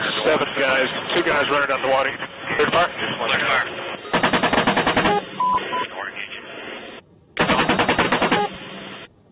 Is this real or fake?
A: real